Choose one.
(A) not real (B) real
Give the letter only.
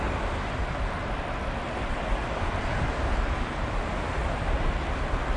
B